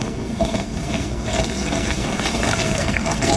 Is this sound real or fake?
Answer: fake